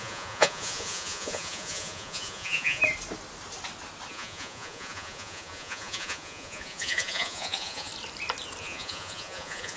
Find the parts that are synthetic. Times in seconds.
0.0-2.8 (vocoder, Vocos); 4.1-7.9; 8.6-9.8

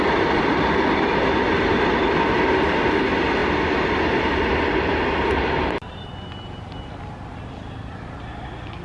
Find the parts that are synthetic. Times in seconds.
none